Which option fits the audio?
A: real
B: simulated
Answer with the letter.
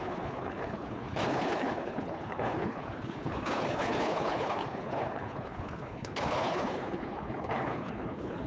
B